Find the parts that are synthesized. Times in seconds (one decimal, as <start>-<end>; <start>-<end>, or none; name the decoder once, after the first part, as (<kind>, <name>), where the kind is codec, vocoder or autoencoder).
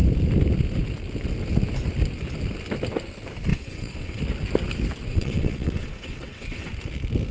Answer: 3.5-4.2 (vocoder, WaveNeXt); 5.1-6.7